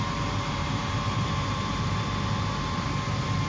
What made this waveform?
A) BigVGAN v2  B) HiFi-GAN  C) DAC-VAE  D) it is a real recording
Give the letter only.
A